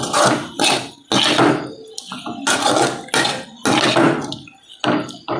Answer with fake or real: real